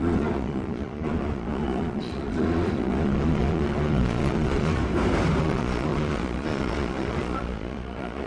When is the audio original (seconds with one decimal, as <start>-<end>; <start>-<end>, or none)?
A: 4.8-5.4